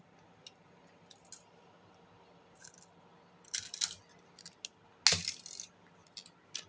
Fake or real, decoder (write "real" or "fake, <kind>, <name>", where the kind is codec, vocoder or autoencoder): real